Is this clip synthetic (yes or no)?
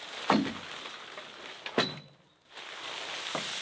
no